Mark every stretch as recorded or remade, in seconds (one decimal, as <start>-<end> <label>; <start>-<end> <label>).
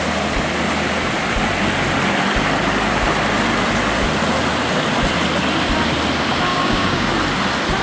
0.0-6.5 recorded; 6.5-7.1 remade; 7.1-7.8 recorded